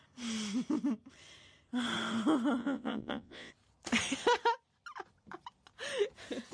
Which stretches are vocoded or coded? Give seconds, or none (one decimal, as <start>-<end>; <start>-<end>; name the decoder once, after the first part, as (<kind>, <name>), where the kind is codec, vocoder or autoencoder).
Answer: 2.6-3.5 (vocoder, Vocos)